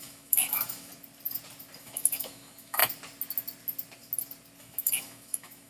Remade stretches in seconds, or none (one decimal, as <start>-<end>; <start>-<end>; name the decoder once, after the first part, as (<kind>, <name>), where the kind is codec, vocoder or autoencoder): 0.0-0.9 (autoencoder, DAC-VAE); 1.8-2.8; 4.6-5.7

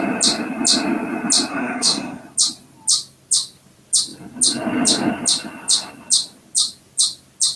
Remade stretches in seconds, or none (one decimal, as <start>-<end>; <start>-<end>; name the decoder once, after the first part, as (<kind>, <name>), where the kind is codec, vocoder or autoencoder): 1.5-2.2 (codec, SNAC)